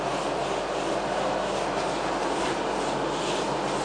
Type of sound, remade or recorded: recorded